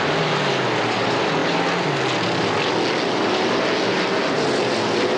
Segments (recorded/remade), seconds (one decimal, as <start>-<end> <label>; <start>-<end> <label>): 0.0-5.2 recorded